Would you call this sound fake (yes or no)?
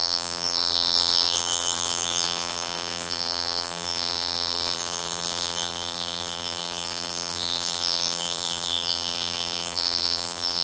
yes